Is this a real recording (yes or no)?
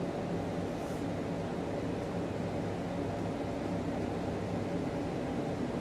yes